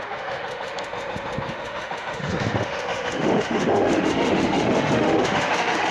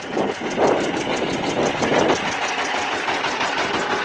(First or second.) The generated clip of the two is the first